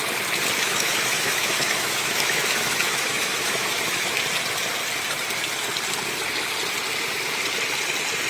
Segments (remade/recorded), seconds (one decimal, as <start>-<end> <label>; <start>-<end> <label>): 0.0-0.6 recorded; 0.6-4.2 remade; 4.2-8.3 recorded